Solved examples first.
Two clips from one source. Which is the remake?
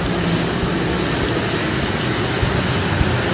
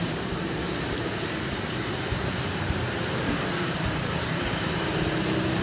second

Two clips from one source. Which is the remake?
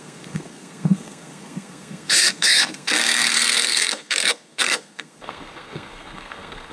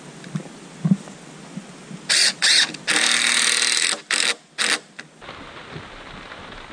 first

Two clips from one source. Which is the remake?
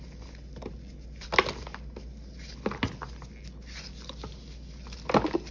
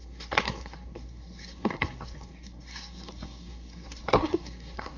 second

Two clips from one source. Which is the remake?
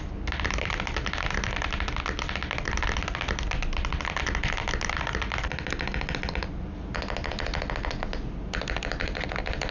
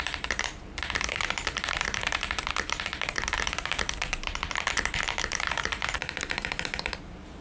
second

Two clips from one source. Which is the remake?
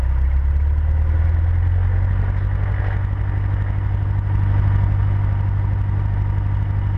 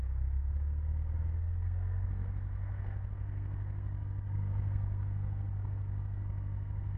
second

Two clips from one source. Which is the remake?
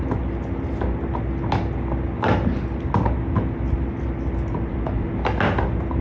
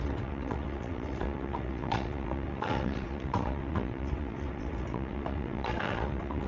second